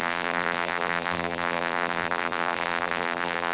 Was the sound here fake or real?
fake